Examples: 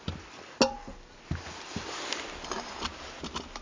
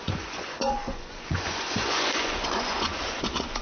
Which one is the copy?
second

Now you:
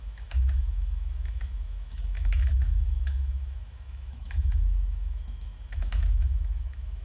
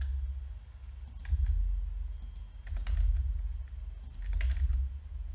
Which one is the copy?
first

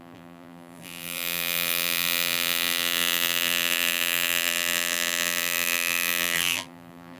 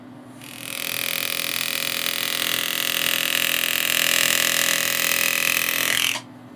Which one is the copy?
first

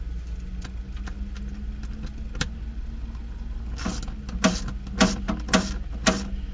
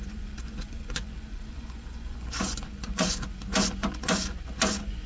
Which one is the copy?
second